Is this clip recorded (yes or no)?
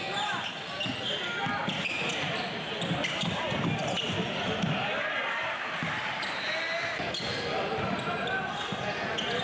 yes